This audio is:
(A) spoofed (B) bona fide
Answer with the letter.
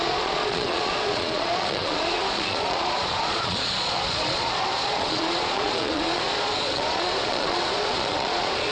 A